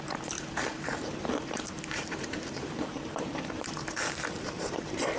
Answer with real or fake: fake